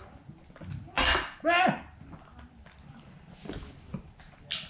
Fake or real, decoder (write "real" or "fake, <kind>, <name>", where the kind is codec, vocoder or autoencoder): real